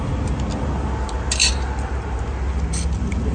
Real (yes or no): yes